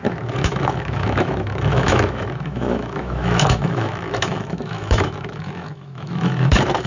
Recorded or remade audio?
remade